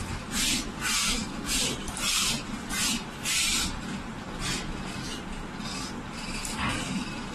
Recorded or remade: recorded